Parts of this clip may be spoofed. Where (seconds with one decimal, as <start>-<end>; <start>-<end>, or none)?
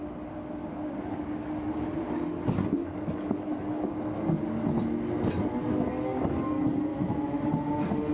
2.8-3.9; 6.9-7.4